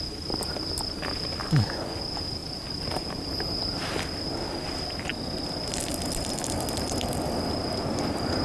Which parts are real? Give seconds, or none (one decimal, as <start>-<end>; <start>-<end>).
0.0-1.4; 2.0-8.4

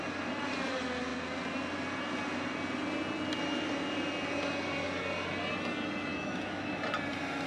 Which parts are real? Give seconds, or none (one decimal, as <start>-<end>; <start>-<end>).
0.0-6.1; 6.8-7.5

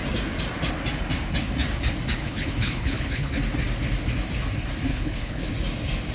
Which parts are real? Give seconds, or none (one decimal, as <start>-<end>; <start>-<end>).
0.0-2.2; 3.3-4.9; 5.5-6.1